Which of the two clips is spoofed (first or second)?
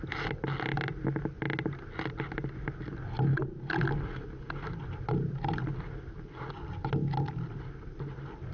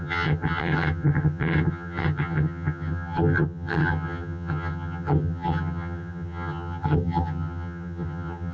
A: second